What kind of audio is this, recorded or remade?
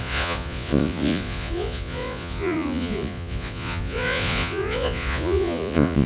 remade